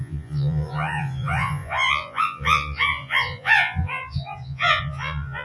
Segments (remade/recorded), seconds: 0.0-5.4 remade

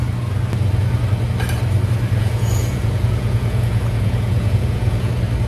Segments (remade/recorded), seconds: 0.0-2.2 recorded; 2.2-5.1 remade; 5.1-5.5 recorded

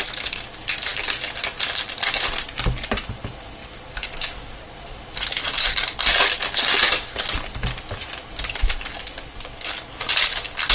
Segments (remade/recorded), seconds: 0.0-10.7 recorded

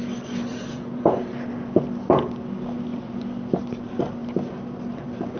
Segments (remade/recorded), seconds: 0.0-0.5 recorded; 0.5-1.2 remade; 1.2-5.4 recorded